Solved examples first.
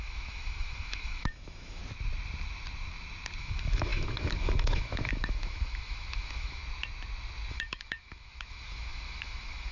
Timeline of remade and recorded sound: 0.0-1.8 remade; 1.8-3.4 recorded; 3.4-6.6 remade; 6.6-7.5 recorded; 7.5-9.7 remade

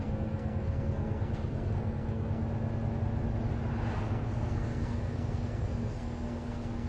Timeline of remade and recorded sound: 0.0-2.4 remade; 2.4-4.0 recorded; 4.0-6.9 remade

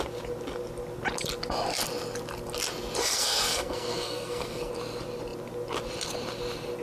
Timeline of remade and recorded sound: 0.0-3.0 recorded; 3.0-4.7 remade; 4.7-6.8 recorded

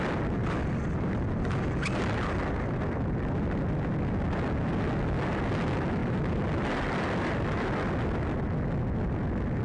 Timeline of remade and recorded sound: 0.0-9.6 recorded